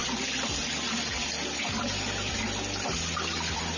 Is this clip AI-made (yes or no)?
no